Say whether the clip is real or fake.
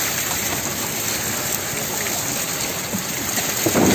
real